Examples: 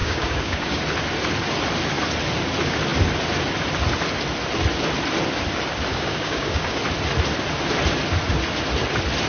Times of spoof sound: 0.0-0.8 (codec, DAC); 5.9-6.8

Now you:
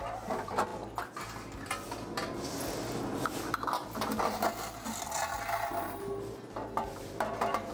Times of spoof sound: none

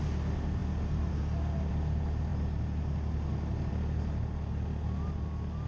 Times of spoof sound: none

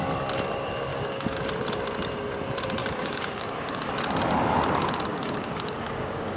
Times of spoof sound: 0.9-1.4 (codec, DAC); 2.8-3.9; 5.1-6.4

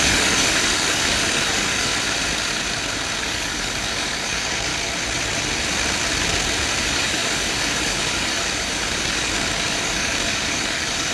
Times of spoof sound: 0.0-1.9 (codec, DAC); 3.2-4.7; 6.8-11.1